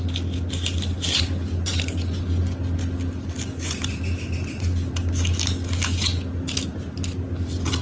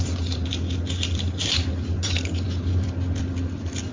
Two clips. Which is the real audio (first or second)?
first